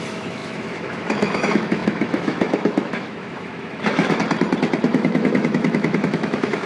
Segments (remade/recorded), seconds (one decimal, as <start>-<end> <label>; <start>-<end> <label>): 0.0-4.2 remade; 4.2-4.9 recorded; 4.9-6.7 remade

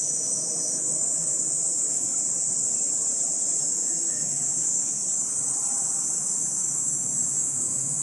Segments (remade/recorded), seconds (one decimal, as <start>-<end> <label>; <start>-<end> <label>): 0.0-2.1 remade; 2.1-3.6 recorded; 3.6-5.0 remade; 5.0-5.7 recorded; 5.7-8.0 remade

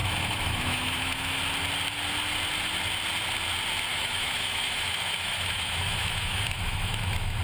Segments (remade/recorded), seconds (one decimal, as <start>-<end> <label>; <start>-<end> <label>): 0.0-1.4 remade; 1.4-3.9 recorded; 3.9-7.4 remade

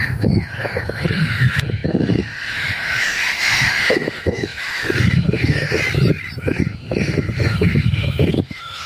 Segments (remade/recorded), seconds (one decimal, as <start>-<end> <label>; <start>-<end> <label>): 0.0-5.8 remade; 5.8-6.4 recorded; 6.4-8.9 remade

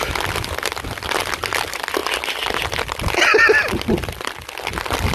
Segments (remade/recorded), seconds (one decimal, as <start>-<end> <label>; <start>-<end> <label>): 0.0-5.1 recorded

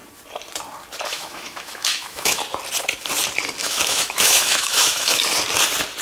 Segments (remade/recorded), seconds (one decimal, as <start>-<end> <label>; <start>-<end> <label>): 0.0-1.1 recorded; 1.1-2.4 remade; 2.4-3.6 recorded; 3.6-5.2 remade; 5.2-6.0 recorded

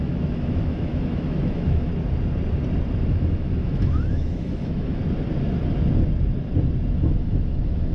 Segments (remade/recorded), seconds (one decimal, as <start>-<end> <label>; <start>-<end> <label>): 0.0-1.9 remade; 1.9-3.1 recorded; 3.1-5.0 remade; 5.0-7.0 recorded; 7.0-7.9 remade

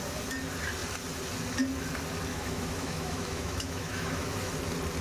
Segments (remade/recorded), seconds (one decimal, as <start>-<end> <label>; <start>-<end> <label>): 0.0-2.3 recorded; 2.3-4.5 remade; 4.5-5.0 recorded